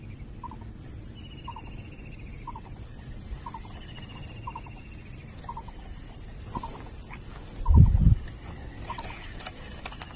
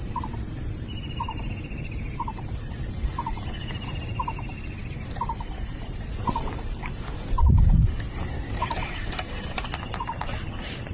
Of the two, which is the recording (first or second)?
first